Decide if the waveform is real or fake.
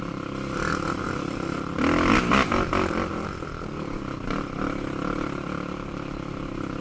real